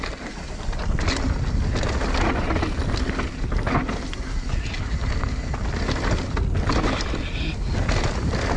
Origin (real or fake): real